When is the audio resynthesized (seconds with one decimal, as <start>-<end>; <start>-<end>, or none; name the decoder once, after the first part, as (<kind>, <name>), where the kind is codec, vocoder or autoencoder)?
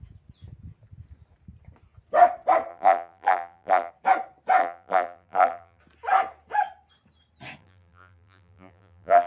2.7-3.9 (vocoder, BigVGAN v2); 4.6-5.8; 7.6-9.3